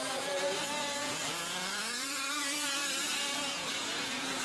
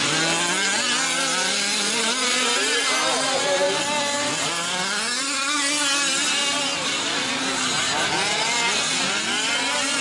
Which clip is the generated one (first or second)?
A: first